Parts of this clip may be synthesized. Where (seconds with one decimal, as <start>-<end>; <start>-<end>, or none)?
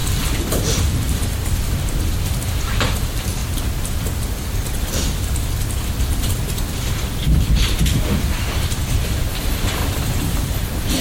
0.0-3.4; 6.2-7.8; 8.4-9.8